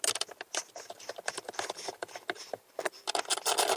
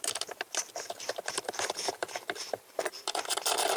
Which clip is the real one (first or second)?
first